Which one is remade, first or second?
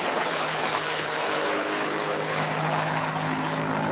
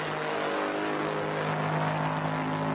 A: first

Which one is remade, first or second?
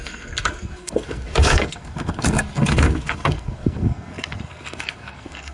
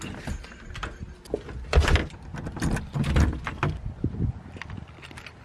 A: first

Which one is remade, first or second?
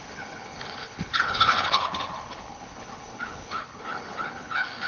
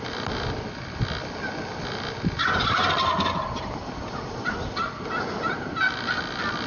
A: first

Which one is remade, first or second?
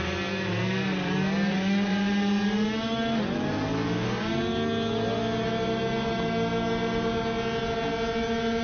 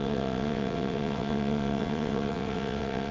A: second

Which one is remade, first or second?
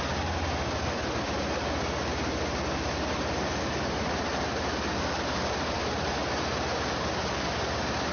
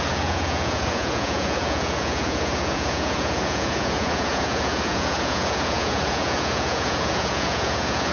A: second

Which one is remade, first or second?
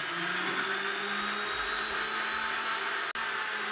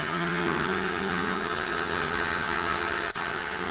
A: second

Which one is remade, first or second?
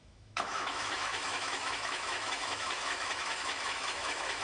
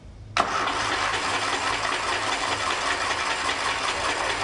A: first